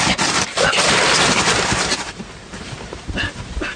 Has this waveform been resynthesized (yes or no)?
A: yes